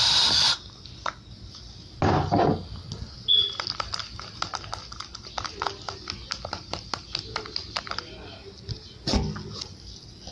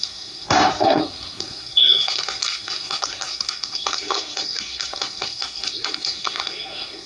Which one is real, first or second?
first